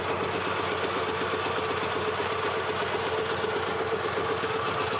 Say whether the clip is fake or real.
real